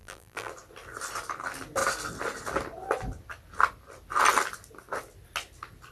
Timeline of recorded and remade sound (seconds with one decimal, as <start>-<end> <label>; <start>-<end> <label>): 0.0-0.5 remade; 0.5-5.9 recorded